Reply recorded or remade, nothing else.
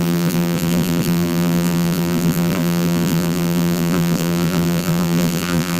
remade